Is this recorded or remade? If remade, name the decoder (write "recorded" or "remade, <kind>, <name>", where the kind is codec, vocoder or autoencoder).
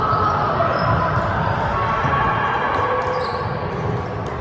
recorded